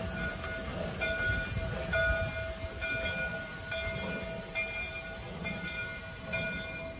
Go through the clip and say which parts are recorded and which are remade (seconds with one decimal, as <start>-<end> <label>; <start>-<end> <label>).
0.0-5.4 recorded; 5.4-6.0 remade; 6.0-7.0 recorded